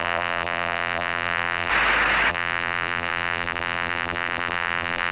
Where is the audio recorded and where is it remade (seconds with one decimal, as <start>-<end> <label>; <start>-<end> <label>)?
0.0-1.7 remade; 1.7-2.3 recorded; 2.3-5.1 remade